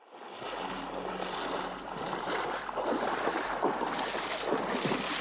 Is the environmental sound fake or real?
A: real